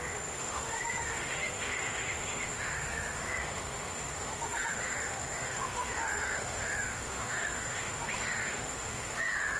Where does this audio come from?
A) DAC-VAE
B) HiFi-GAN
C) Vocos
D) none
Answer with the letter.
A